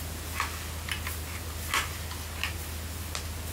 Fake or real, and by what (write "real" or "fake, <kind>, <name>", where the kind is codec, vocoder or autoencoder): real